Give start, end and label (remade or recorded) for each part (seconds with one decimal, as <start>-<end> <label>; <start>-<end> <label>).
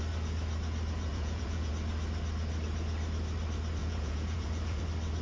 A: 0.0-1.1 recorded; 1.1-1.7 remade; 1.7-3.8 recorded; 3.8-4.8 remade; 4.8-5.2 recorded